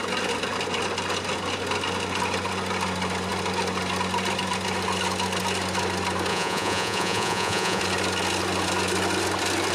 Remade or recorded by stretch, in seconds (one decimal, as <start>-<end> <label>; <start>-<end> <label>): 0.0-6.3 recorded; 6.3-7.8 remade; 7.8-9.7 recorded